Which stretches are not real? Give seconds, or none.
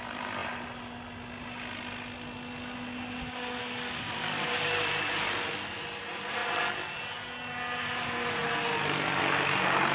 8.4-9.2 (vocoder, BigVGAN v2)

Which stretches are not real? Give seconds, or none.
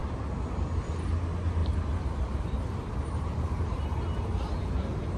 1.6-4.0 (vocoder, BigVGAN v2)